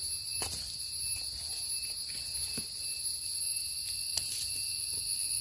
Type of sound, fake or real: real